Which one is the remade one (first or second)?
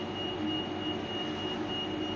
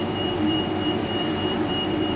second